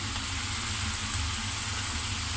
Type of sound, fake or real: real